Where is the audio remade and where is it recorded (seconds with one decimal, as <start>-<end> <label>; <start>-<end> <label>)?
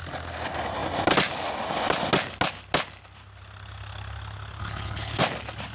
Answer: 0.0-4.6 recorded; 4.6-5.2 remade; 5.2-5.7 recorded